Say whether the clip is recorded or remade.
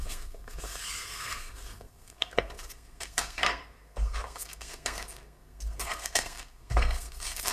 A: remade